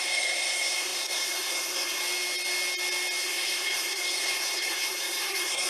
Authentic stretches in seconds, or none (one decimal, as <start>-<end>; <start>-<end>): 2.0-3.2